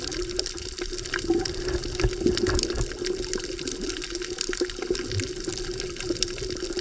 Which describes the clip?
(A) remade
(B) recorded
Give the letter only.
B